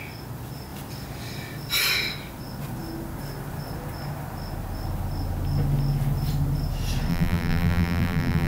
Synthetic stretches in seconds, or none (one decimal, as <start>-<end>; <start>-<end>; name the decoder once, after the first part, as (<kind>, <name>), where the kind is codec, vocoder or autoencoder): 7.1-8.5 (vocoder, BigVGAN v2)